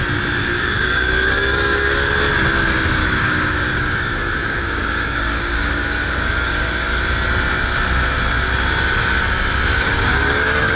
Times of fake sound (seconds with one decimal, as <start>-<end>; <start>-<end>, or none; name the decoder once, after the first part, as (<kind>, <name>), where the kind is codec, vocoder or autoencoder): 0.4-2.1 (codec, DAC); 3.0-7.0; 9.7-10.8